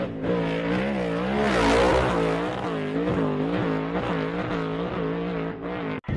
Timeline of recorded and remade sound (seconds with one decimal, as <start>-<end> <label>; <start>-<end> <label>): 0.0-6.2 recorded